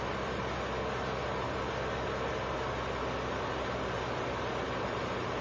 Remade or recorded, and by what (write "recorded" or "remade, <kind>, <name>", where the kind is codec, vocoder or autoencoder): recorded